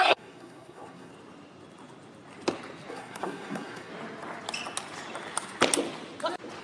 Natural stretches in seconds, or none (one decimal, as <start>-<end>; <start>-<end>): 1.1-2.9; 3.9-6.6

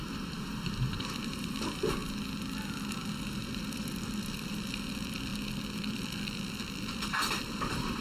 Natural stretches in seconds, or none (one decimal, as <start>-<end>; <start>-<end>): 2.0-2.9; 5.3-5.9

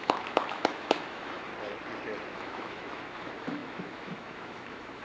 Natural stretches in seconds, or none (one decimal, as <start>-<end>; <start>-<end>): 1.5-2.3

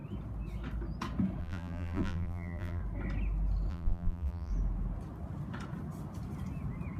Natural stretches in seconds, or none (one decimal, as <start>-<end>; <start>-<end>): 0.0-1.4; 2.8-3.7; 4.5-7.0

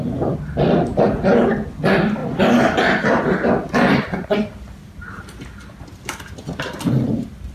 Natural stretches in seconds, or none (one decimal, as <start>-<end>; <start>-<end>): 0.0-7.5

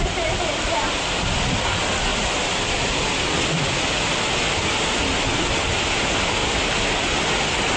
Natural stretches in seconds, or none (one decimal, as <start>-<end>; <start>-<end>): 0.0-2.1; 3.5-6.4; 7.0-7.8